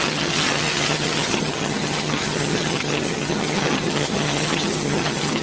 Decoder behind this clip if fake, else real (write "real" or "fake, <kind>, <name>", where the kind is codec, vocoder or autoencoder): fake, vocoder, HiFi-GAN